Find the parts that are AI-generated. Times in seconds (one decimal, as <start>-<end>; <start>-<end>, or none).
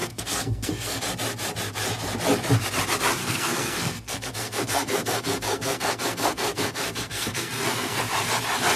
0.0-1.0; 3.2-8.0